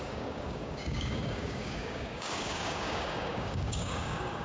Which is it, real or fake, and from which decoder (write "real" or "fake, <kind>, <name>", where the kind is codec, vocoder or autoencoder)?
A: fake, codec, DAC